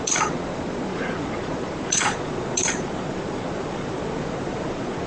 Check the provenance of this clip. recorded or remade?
remade